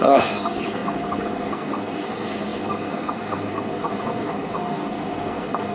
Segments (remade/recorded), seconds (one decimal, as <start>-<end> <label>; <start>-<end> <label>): 0.0-5.7 remade